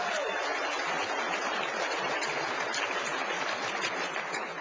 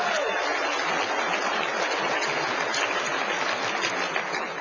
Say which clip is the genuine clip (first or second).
second